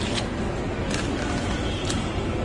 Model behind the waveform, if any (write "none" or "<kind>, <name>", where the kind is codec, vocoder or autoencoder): none